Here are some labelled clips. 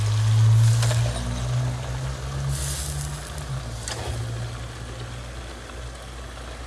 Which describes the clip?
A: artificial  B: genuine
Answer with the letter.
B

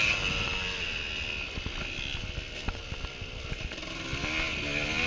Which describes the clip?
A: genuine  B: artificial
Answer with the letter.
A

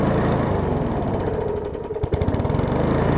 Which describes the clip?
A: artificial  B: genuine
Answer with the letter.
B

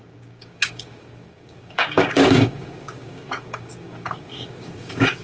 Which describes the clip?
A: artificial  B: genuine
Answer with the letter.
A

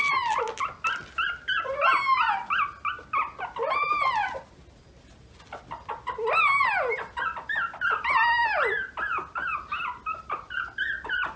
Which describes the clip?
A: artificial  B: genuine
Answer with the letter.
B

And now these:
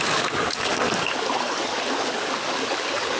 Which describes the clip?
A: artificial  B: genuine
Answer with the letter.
A